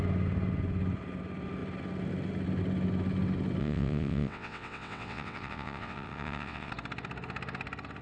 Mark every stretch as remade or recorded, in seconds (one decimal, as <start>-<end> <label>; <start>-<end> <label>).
0.0-3.6 recorded; 3.6-6.7 remade; 6.7-8.0 recorded